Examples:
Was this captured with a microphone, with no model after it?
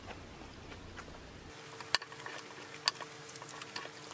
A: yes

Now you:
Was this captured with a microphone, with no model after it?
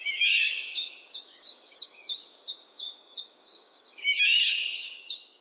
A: no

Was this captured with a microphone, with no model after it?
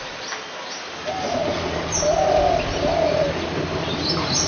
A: yes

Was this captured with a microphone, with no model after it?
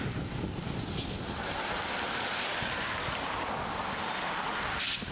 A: yes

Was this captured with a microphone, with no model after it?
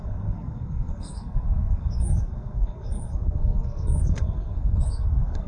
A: no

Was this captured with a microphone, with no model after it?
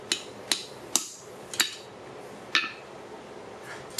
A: yes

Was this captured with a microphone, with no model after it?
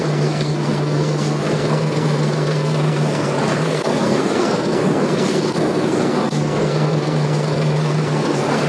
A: no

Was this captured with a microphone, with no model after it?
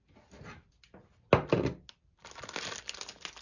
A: yes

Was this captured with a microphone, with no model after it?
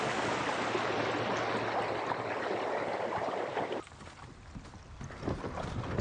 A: yes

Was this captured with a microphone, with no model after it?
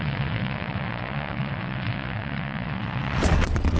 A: no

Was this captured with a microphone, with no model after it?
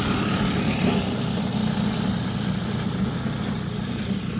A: yes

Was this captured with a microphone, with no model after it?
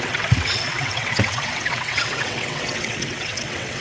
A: no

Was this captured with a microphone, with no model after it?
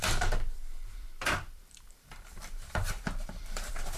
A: no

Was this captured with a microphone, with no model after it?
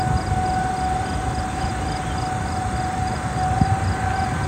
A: yes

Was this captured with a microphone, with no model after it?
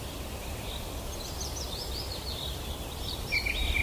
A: no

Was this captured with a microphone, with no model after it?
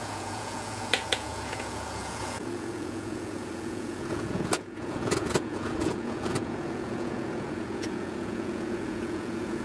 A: no